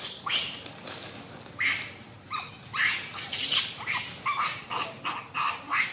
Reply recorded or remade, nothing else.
recorded